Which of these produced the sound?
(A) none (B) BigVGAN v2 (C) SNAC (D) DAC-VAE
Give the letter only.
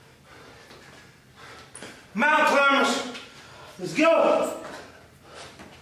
A